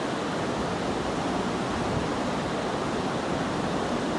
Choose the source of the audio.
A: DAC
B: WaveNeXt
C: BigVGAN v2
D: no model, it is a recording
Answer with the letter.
D